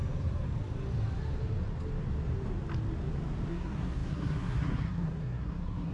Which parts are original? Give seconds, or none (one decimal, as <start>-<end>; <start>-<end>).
0.0-3.5